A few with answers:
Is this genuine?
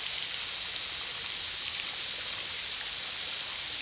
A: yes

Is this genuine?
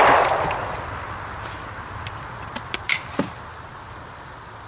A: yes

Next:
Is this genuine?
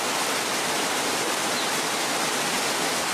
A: yes